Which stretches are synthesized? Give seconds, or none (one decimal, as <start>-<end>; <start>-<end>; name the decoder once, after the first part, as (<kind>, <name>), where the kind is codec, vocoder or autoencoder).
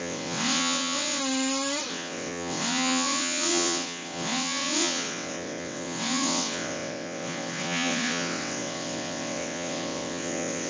0.0-1.2 (vocoder, WaveNeXt); 1.9-10.7